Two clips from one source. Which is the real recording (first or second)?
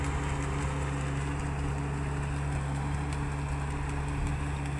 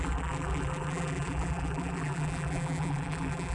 first